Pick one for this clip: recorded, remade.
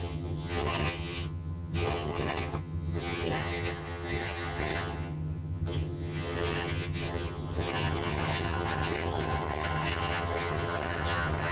remade